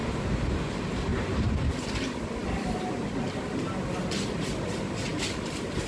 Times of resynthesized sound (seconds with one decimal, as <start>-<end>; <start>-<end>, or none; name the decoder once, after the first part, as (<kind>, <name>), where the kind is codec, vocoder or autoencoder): 1.1-1.7 (vocoder, BigVGAN v2); 5.1-5.9